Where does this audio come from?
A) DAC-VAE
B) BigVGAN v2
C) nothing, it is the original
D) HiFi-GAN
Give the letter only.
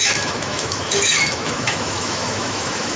A